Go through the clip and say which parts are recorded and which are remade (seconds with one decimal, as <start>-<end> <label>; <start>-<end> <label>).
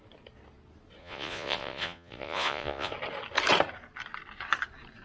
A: 0.0-1.0 recorded; 1.0-2.9 remade; 2.9-5.0 recorded